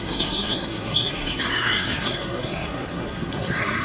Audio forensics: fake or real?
fake